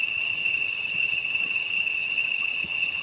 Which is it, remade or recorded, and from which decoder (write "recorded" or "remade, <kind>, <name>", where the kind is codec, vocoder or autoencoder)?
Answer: remade, vocoder, HiFi-GAN